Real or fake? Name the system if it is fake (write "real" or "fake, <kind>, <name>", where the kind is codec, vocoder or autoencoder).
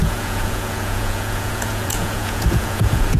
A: fake, vocoder, Vocos